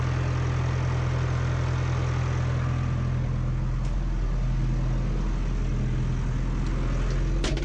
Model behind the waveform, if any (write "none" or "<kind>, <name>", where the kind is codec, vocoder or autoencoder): none